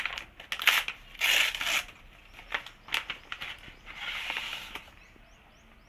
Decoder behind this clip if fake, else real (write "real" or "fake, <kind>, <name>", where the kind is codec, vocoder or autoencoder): real